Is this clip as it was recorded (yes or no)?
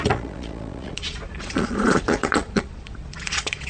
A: no